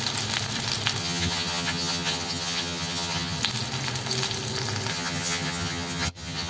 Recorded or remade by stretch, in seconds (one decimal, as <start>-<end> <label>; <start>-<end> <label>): 0.0-1.0 recorded; 1.0-3.4 remade; 3.4-4.9 recorded; 4.9-6.5 remade